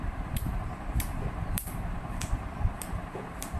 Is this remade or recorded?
remade